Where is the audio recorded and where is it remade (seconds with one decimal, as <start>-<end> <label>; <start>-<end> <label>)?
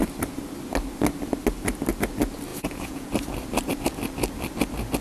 0.0-2.5 recorded; 2.5-3.1 remade; 3.1-5.0 recorded